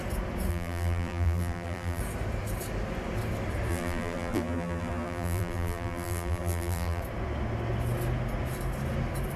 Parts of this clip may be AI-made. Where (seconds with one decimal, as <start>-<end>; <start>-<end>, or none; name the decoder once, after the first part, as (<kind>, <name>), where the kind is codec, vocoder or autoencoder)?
0.5-2.0 (vocoder, BigVGAN v2); 3.7-7.0